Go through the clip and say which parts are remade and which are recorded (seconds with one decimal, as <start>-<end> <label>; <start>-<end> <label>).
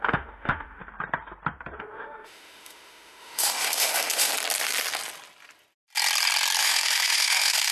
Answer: 0.0-0.8 remade; 0.8-1.8 recorded; 1.8-4.3 remade; 4.3-6.6 recorded; 6.6-7.7 remade